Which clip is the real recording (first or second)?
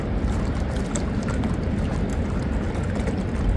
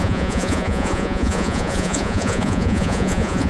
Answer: first